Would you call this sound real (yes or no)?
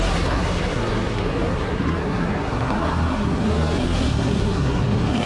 no